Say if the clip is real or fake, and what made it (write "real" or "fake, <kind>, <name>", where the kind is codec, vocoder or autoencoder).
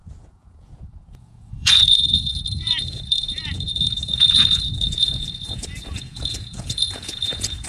fake, vocoder, Vocos